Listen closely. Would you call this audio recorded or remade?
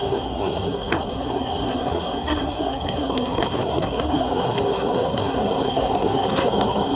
remade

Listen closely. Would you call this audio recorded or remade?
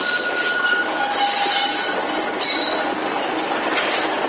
recorded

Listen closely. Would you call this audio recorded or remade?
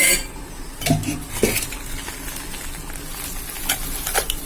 recorded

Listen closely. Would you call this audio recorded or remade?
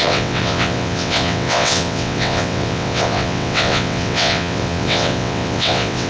remade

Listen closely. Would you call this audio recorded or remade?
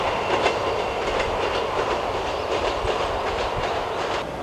recorded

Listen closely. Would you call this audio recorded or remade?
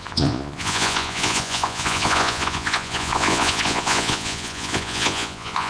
remade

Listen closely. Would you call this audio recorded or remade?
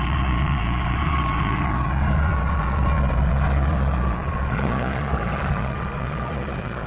remade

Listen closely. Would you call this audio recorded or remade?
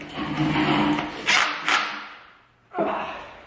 recorded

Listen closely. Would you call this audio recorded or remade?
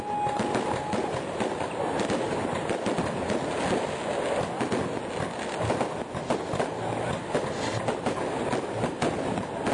recorded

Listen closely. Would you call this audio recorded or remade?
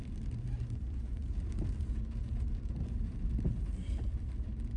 recorded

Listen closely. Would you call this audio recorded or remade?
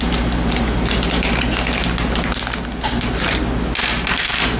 recorded